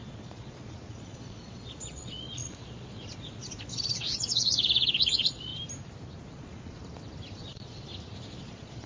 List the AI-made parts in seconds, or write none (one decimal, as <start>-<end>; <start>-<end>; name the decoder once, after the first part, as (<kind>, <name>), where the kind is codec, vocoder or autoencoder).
0.0-5.5 (vocoder, Vocos); 6.2-6.8; 7.3-7.9; 8.4-8.9